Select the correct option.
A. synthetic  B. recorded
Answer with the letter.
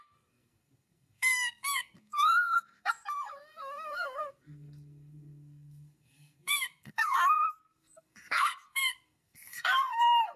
A